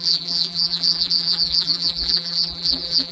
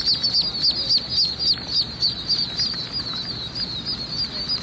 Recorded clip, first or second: second